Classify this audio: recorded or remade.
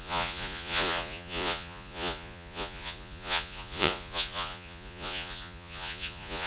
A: remade